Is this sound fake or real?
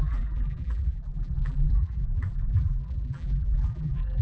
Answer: fake